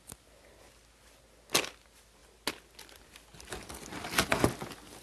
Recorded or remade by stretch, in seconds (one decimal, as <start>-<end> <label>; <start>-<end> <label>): 0.0-5.0 recorded

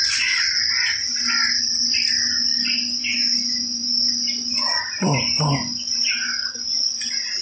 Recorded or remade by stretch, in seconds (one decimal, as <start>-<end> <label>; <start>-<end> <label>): 0.0-7.4 recorded

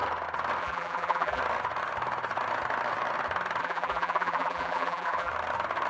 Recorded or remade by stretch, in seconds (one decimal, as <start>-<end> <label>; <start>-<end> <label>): 0.0-0.6 recorded; 0.6-1.4 remade; 1.4-3.6 recorded; 3.6-5.3 remade; 5.3-5.9 recorded